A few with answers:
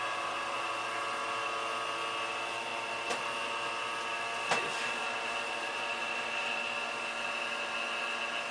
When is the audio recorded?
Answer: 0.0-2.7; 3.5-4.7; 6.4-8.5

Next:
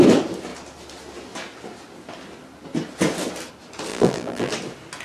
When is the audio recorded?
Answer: 0.0-3.9; 4.5-5.0

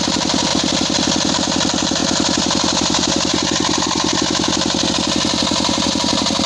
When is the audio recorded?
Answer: 0.5-1.3; 2.0-4.9

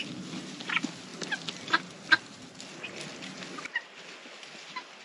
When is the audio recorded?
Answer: 0.0-5.0

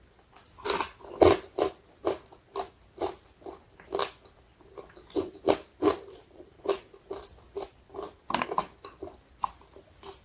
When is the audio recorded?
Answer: 0.0-5.7; 6.6-10.2

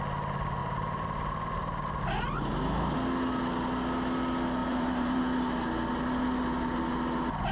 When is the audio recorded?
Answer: 0.0-0.6; 2.0-4.6; 5.2-7.5